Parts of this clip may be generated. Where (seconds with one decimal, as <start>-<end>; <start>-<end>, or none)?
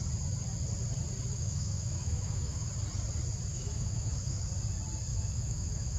1.3-2.7; 3.5-4.5; 5.1-6.0